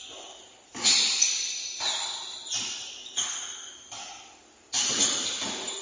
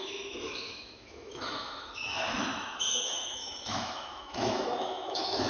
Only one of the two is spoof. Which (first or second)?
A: second